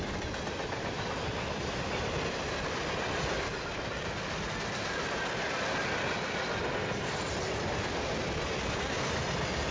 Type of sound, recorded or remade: recorded